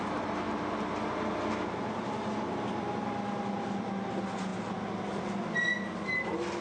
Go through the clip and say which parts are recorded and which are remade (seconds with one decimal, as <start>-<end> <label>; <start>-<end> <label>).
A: 0.0-6.6 recorded